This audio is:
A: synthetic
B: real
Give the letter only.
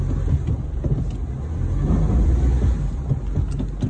B